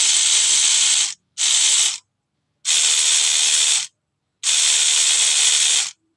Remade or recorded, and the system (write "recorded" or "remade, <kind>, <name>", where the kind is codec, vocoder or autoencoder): recorded